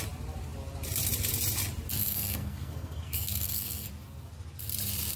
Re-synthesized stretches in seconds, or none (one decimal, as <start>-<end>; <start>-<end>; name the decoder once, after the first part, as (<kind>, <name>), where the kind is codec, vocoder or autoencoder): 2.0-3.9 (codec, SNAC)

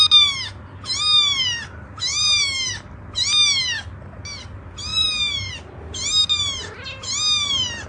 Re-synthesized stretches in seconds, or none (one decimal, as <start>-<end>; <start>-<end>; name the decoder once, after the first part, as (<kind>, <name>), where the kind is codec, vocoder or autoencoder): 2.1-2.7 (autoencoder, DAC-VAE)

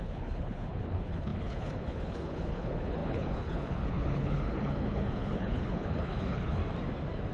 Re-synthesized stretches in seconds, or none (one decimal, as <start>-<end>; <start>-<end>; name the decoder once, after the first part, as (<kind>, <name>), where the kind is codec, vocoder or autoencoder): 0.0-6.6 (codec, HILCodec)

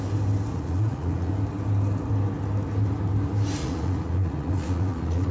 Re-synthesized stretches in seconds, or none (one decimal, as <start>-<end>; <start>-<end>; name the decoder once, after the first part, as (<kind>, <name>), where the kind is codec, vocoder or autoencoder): 0.5-1.3 (vocoder, Vocos); 3.6-5.3

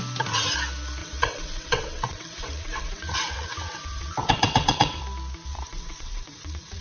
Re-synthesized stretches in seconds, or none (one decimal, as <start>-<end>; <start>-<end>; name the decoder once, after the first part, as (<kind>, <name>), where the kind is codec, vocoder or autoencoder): 1.0-5.0 (vocoder, WaveNeXt); 5.5-6.8

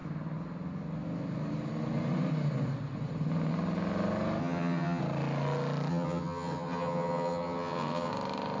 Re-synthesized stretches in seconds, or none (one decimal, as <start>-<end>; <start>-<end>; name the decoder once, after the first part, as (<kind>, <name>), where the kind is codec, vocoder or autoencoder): 4.4-5.0 (vocoder, HiFi-GAN); 5.9-8.1

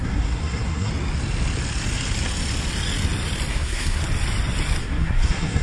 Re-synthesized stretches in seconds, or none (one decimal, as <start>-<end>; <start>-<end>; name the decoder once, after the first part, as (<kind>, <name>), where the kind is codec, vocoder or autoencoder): 0.0-0.9 (codec, SNAC); 3.5-4.0; 4.8-5.6

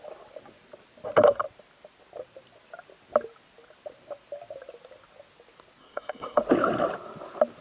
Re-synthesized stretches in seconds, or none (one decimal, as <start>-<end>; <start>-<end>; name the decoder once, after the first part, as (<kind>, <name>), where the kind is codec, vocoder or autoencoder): 5.8-6.4 (codec, SNAC)